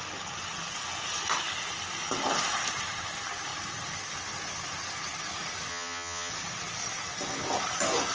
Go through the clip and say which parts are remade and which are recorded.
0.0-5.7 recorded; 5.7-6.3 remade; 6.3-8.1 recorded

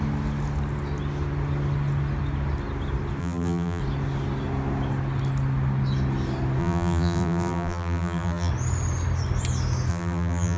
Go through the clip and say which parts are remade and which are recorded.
0.0-3.2 recorded; 3.2-3.8 remade; 3.8-6.6 recorded; 6.6-8.5 remade; 8.5-9.9 recorded; 9.9-10.6 remade

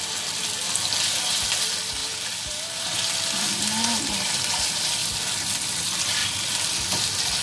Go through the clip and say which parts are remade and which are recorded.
0.0-7.4 recorded

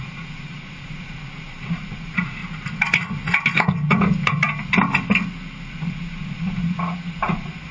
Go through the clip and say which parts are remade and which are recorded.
0.0-2.4 remade; 2.4-5.7 recorded; 5.7-7.7 remade

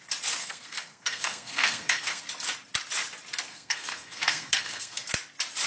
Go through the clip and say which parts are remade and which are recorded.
0.0-0.4 recorded; 0.4-2.2 remade; 2.2-3.5 recorded; 3.5-5.1 remade; 5.1-5.7 recorded